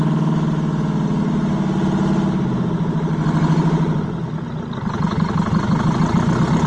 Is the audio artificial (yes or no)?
no